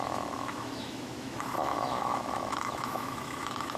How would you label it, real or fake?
fake